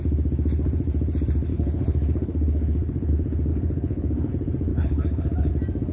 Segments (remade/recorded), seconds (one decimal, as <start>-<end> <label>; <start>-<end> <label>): 0.0-1.5 recorded; 1.5-3.1 remade; 3.1-3.5 recorded; 3.5-4.3 remade; 4.3-4.7 recorded; 4.7-5.5 remade; 5.5-5.9 recorded